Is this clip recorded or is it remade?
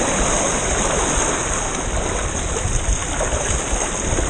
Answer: recorded